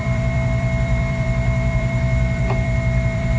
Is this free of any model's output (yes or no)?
no